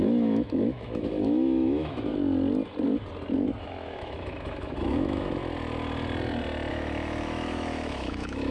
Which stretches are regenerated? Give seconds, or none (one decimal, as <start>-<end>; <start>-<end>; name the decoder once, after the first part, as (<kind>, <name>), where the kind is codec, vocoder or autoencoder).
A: 0.0-2.1 (autoencoder, DAC-VAE); 3.6-5.4; 6.7-8.5

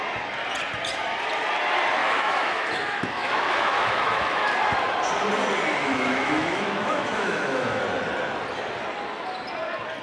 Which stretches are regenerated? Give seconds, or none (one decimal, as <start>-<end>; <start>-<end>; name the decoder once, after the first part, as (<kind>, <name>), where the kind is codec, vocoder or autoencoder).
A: 2.0-4.5 (autoencoder, DAC-VAE); 5.8-7.8

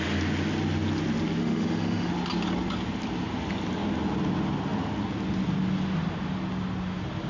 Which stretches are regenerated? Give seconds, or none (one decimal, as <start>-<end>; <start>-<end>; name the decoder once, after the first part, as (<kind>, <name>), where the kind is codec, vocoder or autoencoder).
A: 1.4-2.1 (autoencoder, DAC-VAE)